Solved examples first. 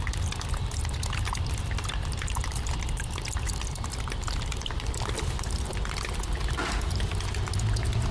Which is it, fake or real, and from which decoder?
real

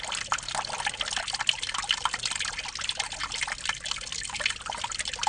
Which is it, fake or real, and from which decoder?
real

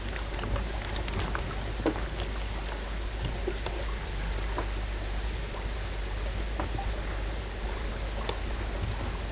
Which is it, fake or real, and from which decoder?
real